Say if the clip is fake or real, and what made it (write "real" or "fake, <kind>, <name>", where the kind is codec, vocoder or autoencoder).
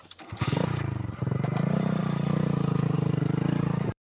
fake, vocoder, BigVGAN v2